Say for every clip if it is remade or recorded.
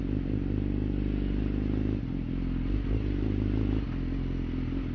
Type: recorded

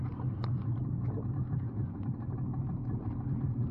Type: recorded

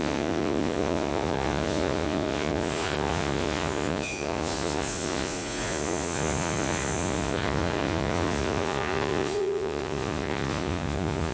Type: remade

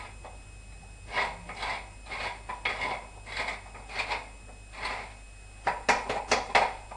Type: recorded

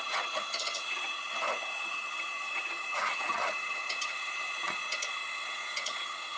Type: remade